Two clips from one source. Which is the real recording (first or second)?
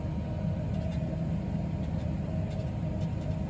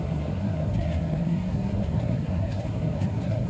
first